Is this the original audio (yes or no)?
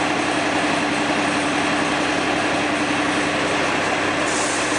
yes